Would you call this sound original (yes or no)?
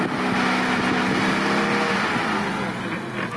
yes